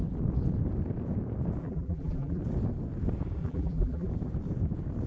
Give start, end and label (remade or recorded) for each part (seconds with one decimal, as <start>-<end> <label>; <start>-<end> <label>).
0.0-1.6 recorded; 1.6-2.4 remade; 2.4-3.4 recorded; 3.4-4.1 remade; 4.1-5.1 recorded